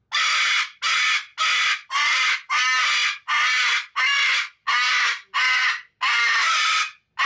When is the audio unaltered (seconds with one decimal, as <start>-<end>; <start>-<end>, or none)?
0.0-7.3